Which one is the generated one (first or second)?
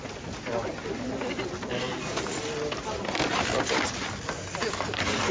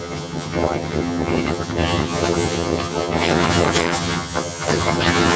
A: second